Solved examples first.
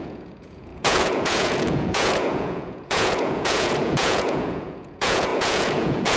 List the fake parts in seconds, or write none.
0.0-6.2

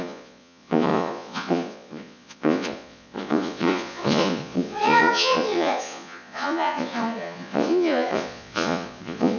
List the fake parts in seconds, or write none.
0.0-9.4